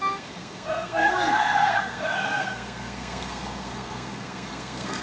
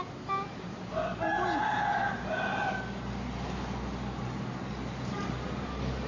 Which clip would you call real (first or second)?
second